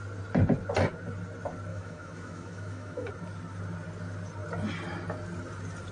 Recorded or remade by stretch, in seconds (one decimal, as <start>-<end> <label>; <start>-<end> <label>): 0.0-1.7 recorded; 1.7-3.1 remade; 3.1-5.9 recorded